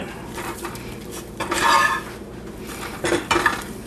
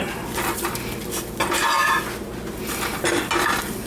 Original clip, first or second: second